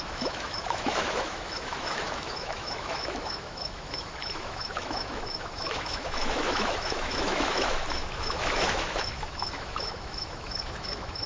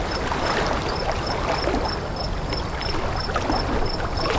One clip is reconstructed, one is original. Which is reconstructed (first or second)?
first